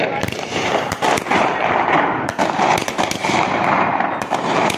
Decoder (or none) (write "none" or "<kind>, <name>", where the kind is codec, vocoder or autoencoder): vocoder, BigVGAN v2